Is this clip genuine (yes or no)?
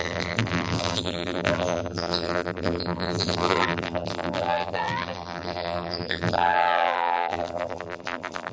no